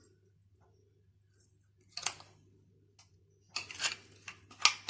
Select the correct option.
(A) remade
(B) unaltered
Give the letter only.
B